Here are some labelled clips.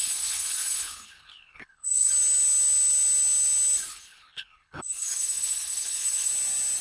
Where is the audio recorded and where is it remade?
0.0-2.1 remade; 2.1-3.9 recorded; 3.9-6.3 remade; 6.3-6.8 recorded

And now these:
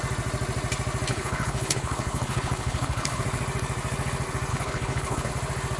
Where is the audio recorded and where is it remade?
0.0-1.1 recorded; 1.1-3.2 remade; 3.2-4.5 recorded; 4.5-5.3 remade; 5.3-5.8 recorded